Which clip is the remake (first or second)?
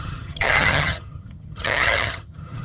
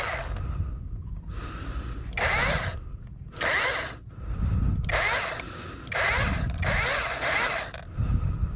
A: first